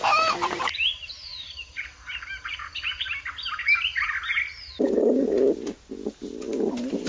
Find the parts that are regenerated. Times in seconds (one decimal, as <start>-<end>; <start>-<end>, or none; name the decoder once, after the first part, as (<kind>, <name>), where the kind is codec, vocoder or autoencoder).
0.0-2.7 (vocoder, BigVGAN v2)